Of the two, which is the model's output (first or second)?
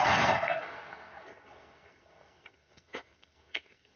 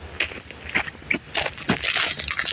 first